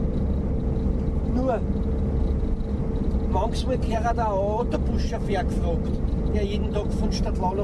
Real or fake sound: real